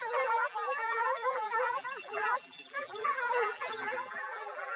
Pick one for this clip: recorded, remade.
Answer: remade